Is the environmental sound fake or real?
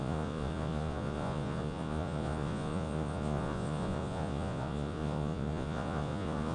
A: fake